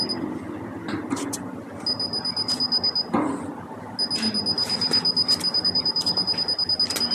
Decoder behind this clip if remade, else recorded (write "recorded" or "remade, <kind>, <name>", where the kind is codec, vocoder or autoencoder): recorded